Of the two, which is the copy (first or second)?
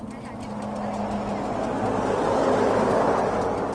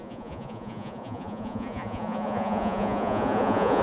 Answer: second